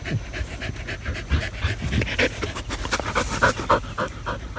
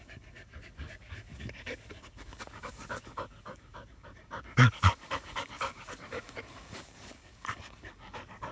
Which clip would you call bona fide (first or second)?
first